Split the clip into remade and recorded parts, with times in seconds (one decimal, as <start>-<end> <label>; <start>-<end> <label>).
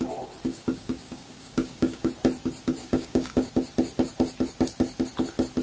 0.0-0.5 recorded; 0.5-2.1 remade; 2.1-2.8 recorded; 2.8-3.5 remade; 3.5-5.6 recorded